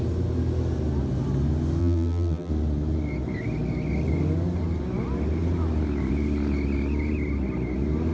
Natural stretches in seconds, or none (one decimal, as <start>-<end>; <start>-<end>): 0.0-1.8; 2.5-8.1